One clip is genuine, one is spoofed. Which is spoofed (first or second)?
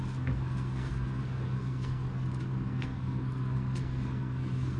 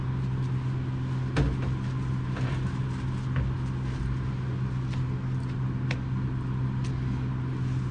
first